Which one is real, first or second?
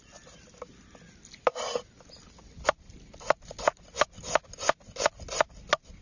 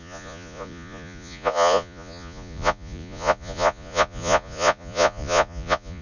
first